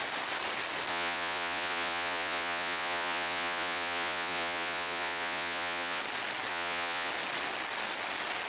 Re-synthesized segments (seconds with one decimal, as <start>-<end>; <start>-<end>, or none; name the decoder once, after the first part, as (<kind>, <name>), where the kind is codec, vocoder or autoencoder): 0.9-6.0 (vocoder, Vocos); 6.5-7.1